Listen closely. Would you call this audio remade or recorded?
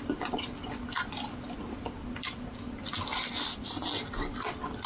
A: recorded